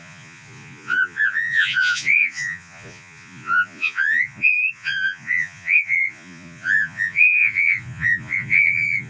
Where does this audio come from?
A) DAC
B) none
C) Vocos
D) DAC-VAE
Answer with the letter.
C